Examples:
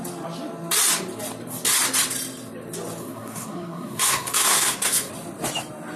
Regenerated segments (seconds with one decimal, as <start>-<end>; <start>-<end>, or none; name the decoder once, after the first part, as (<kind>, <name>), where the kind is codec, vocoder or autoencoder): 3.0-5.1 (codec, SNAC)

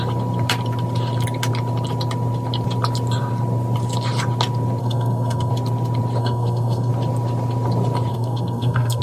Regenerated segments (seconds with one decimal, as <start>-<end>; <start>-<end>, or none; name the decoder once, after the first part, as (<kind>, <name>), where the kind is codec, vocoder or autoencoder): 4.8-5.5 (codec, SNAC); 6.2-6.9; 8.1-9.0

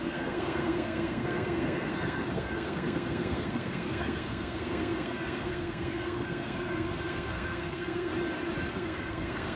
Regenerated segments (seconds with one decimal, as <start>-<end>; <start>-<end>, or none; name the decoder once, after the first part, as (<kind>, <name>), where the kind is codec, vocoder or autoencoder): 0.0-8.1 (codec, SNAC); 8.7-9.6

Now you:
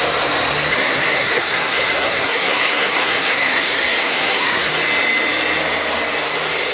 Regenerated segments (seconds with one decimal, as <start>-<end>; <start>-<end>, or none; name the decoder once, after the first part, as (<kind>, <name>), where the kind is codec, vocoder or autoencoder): 0.7-4.7 (codec, SNAC)